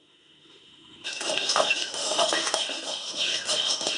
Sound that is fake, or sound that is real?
fake